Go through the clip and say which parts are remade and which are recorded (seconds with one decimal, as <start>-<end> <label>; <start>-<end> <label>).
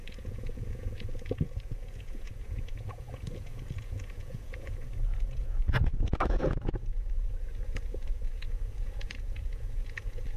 0.0-10.4 remade